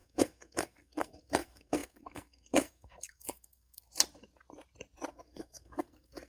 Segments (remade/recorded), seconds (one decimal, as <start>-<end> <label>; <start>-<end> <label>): 0.0-3.9 remade; 3.9-5.1 recorded; 5.1-6.3 remade